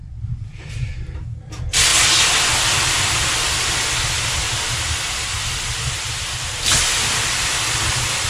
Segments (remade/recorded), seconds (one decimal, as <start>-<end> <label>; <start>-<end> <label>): 0.0-8.3 recorded